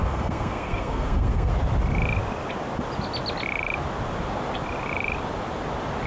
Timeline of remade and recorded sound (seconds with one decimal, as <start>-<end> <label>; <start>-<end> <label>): 0.0-1.5 remade; 1.5-6.1 recorded